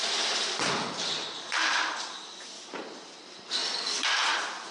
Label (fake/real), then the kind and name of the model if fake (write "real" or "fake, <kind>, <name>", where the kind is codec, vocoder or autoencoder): real